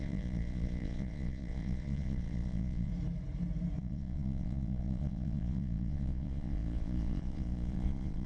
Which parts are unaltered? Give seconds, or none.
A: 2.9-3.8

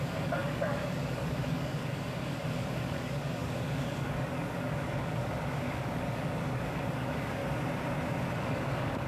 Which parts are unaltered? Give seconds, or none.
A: 7.4-8.4